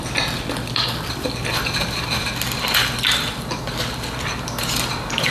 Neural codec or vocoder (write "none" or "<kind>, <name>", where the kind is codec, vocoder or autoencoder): none